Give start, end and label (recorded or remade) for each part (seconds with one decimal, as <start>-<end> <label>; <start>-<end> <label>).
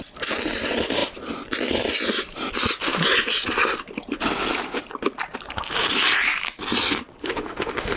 0.0-7.2 recorded; 7.2-8.0 remade